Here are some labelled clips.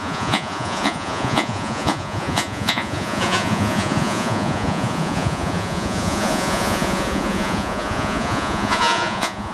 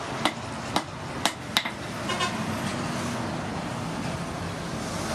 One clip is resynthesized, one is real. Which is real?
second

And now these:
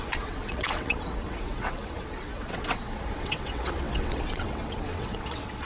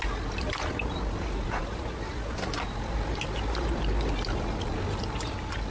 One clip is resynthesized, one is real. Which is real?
second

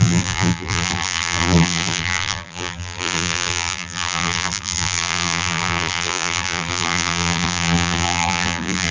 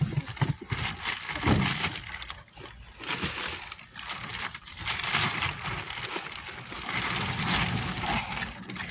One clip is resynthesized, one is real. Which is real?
second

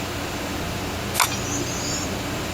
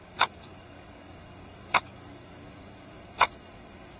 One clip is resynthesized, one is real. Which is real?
first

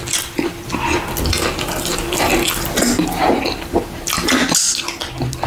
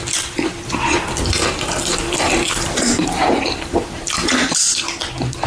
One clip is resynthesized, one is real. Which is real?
first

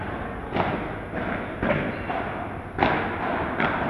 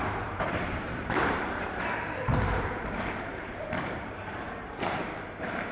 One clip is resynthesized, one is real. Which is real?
first